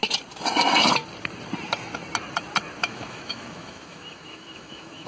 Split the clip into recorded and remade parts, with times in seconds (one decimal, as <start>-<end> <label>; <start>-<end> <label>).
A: 0.0-2.8 recorded; 2.8-5.1 remade